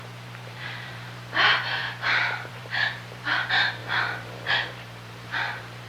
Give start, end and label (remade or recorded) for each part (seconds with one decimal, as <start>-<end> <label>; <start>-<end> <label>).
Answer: 0.0-1.8 remade; 1.8-2.5 recorded; 2.5-5.9 remade